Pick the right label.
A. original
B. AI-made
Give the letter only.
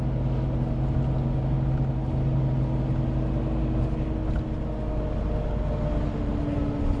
A